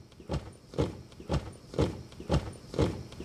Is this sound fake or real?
real